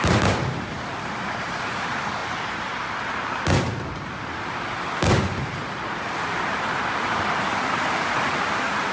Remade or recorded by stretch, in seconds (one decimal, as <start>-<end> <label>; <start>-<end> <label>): 0.0-2.2 remade; 2.2-7.4 recorded; 7.4-8.9 remade